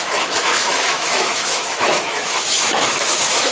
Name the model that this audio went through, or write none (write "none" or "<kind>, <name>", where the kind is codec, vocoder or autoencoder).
autoencoder, DAC-VAE